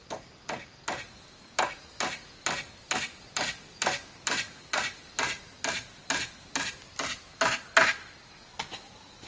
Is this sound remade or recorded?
recorded